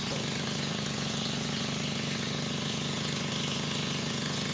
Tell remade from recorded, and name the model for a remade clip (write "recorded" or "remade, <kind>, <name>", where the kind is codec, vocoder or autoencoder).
remade, vocoder, Vocos